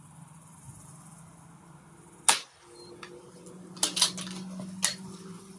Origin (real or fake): real